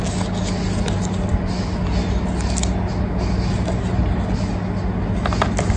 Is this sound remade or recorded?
recorded